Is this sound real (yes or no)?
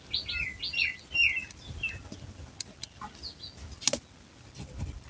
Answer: yes